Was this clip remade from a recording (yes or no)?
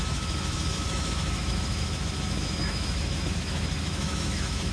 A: yes